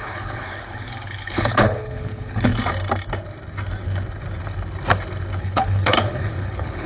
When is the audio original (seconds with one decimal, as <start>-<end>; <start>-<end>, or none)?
2.5-5.4